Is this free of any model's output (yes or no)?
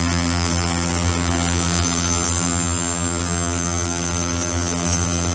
no